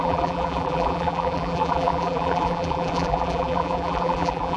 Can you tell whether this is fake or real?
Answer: fake